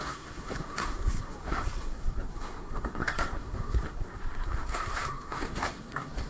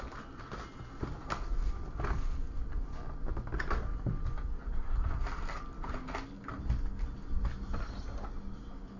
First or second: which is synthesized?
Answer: first